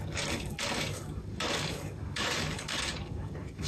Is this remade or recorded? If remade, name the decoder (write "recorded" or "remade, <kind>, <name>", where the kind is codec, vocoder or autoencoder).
remade, codec, DAC